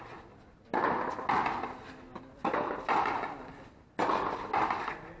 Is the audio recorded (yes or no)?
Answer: yes